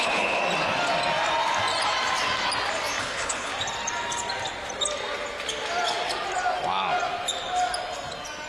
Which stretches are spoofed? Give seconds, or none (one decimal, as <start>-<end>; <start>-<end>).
0.0-0.4; 3.0-3.5